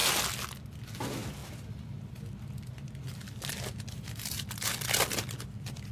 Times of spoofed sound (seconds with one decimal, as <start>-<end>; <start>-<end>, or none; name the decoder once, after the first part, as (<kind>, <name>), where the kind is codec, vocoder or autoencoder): none